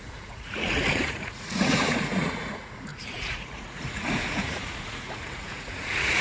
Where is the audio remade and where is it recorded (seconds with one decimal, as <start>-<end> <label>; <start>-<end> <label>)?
0.0-6.2 remade